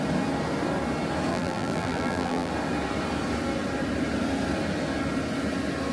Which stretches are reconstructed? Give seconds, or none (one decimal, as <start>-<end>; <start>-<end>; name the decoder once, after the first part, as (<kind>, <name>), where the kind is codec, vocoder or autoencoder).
1.3-2.5 (vocoder, BigVGAN v2)